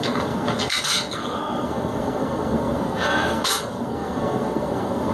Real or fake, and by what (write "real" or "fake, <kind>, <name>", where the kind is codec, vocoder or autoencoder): fake, codec, SNAC